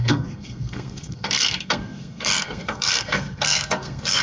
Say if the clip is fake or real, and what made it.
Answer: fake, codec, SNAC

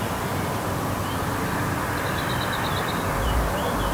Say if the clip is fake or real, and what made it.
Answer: real